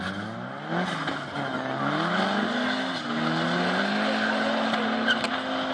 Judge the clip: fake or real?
real